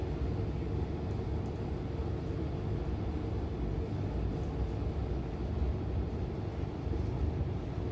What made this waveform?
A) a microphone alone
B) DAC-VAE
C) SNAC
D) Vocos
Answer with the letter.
A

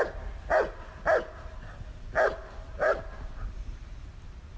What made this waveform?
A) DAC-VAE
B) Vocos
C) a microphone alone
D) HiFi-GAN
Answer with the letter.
C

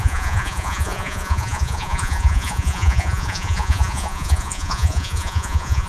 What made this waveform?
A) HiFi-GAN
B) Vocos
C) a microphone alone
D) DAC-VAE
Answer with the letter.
B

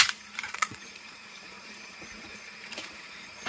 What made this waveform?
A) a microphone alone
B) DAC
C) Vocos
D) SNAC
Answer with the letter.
C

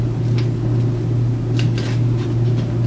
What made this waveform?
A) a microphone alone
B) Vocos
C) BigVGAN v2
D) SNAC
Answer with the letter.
A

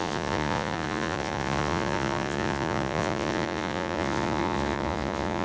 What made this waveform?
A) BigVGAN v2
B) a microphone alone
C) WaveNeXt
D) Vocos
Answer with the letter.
D